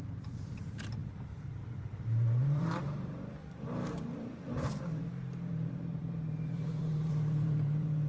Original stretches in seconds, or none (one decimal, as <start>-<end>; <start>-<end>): none